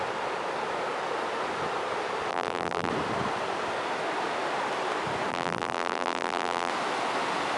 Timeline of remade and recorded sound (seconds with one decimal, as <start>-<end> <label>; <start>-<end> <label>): 0.0-2.3 recorded; 2.3-2.9 remade; 2.9-5.3 recorded; 5.3-6.7 remade; 6.7-7.6 recorded